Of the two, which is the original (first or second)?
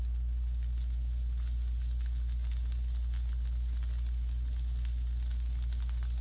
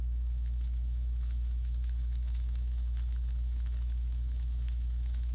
first